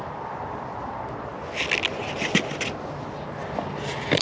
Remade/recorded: recorded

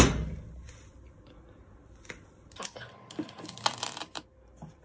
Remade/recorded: recorded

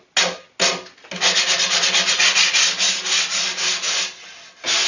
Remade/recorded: recorded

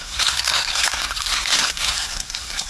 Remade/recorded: remade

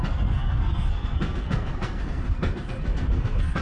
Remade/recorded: remade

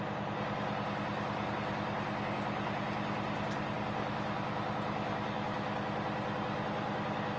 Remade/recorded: recorded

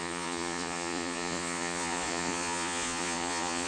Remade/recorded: remade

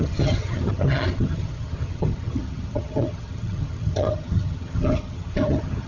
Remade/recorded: remade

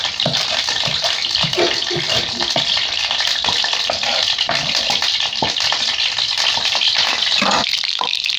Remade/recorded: recorded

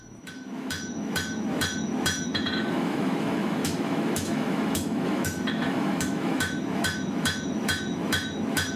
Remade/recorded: remade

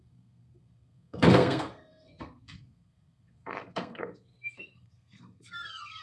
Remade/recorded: remade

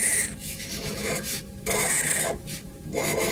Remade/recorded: remade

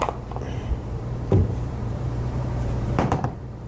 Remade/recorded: remade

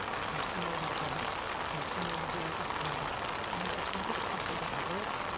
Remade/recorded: recorded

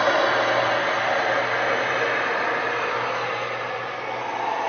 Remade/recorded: recorded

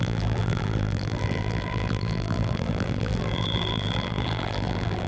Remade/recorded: remade